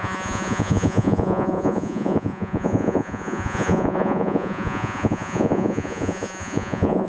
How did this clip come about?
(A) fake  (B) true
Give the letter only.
A